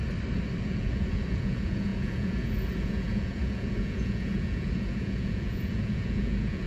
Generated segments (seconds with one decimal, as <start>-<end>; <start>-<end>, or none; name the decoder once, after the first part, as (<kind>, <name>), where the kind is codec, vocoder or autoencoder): 0.6-6.7 (vocoder, Vocos)